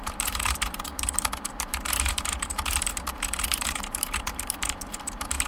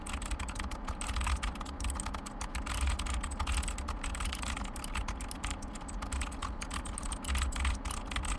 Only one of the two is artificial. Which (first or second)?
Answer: first